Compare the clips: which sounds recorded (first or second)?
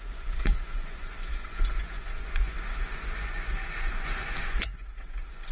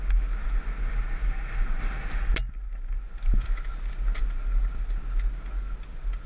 second